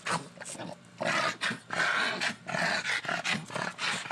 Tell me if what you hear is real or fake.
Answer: real